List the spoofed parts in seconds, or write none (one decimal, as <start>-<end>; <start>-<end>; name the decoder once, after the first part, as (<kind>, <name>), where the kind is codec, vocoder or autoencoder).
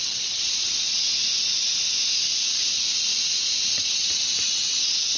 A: none